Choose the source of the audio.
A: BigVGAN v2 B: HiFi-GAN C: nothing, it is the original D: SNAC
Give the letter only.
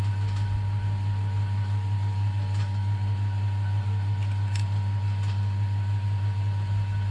C